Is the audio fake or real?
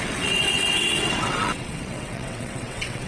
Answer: fake